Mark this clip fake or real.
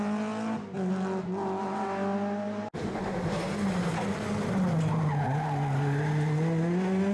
real